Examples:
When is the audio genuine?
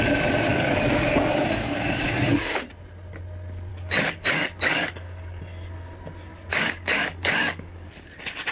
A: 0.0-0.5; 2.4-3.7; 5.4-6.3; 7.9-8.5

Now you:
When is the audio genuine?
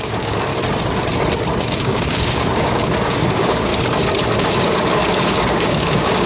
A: 0.5-1.6; 3.7-4.4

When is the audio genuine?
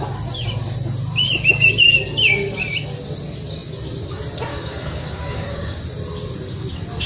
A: 0.0-4.5; 5.8-7.1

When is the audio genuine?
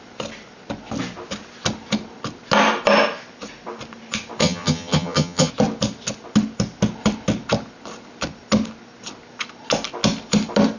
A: 0.0-4.4; 5.5-10.8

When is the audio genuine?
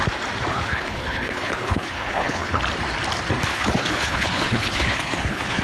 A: 0.0-0.5; 2.6-3.5